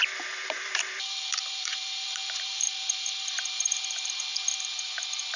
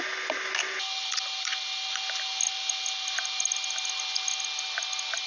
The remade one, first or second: first